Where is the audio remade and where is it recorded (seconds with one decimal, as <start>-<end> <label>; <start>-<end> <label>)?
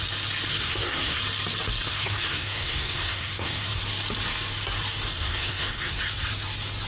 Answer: 0.0-0.5 recorded; 0.5-1.2 remade; 1.2-1.9 recorded; 1.9-3.8 remade; 3.8-5.1 recorded; 5.1-6.0 remade; 6.0-6.9 recorded